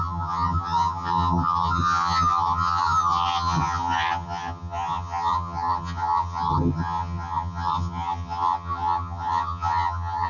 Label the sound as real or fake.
fake